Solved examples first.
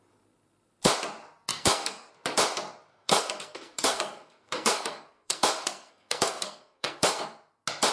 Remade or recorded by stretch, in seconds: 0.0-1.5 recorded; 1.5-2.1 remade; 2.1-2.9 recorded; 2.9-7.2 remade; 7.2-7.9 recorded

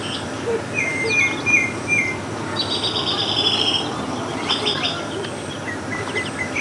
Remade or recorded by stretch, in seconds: 0.0-6.6 remade

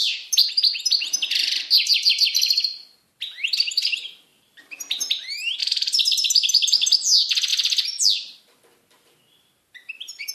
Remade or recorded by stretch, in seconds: 0.0-0.5 remade; 0.5-4.3 recorded; 4.3-5.6 remade; 5.6-10.3 recorded

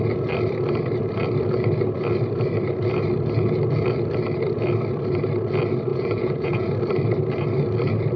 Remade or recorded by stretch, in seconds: 0.0-5.9 recorded; 5.9-6.7 remade; 6.7-8.2 recorded

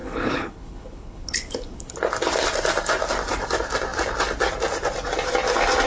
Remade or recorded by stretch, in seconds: 0.0-2.0 remade; 2.0-5.9 recorded